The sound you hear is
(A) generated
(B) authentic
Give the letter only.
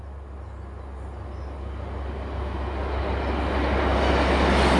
B